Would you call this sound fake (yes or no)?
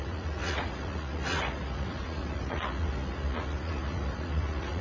yes